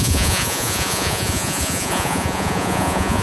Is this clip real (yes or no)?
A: no